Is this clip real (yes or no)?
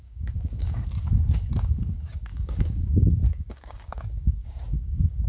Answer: no